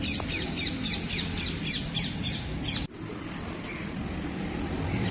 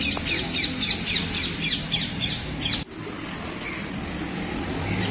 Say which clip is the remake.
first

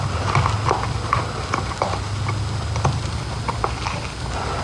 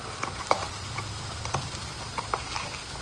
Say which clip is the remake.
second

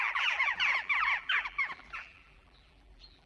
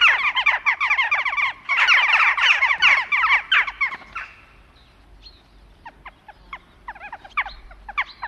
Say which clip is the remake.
first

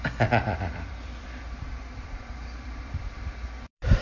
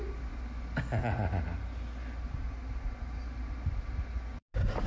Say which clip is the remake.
first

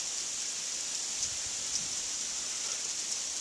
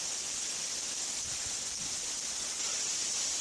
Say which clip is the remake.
second